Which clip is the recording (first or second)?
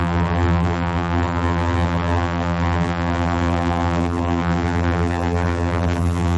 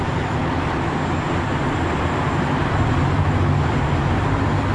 second